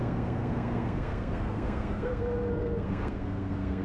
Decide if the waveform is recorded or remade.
remade